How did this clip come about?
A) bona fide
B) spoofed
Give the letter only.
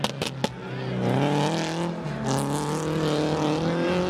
A